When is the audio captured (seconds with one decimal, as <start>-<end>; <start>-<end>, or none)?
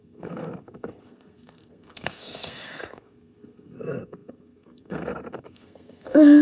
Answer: none